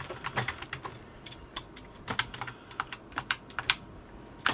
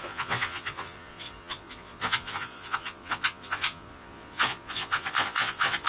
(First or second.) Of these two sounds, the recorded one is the first